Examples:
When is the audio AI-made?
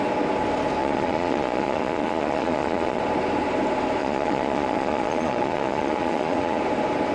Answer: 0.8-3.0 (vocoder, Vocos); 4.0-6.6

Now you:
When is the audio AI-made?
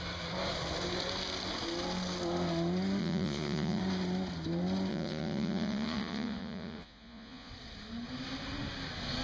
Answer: 3.0-3.8 (vocoder, Vocos); 4.9-7.5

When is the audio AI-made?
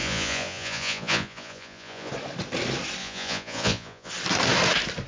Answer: 0.0-2.1 (vocoder, Vocos); 3.0-4.1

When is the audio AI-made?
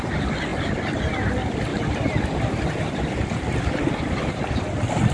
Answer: none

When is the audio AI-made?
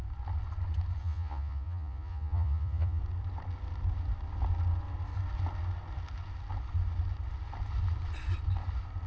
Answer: 1.0-3.0 (vocoder, Vocos)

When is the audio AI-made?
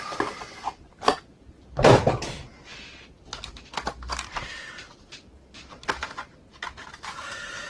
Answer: none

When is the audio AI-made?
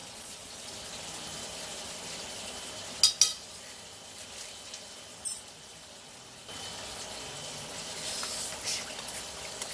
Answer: 0.0-0.7 (vocoder, Vocos)